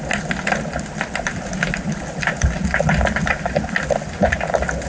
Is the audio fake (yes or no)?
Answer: no